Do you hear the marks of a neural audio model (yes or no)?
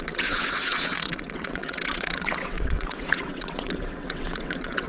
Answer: yes